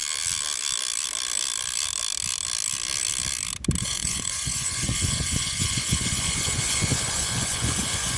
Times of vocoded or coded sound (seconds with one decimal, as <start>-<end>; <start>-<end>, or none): 3.8-8.2